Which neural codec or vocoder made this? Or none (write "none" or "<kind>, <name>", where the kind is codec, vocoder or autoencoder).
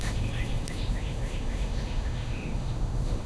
autoencoder, DAC-VAE